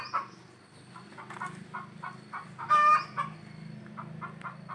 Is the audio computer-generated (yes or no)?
no